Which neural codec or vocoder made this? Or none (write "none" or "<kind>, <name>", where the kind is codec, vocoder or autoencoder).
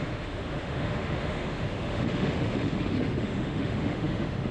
autoencoder, DAC-VAE